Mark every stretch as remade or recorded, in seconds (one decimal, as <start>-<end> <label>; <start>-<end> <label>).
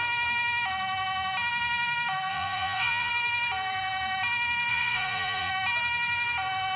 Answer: 0.0-2.3 recorded; 2.3-3.1 remade; 3.1-4.7 recorded; 4.7-5.5 remade; 5.5-6.8 recorded